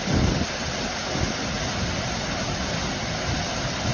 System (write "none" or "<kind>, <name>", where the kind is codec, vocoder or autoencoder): none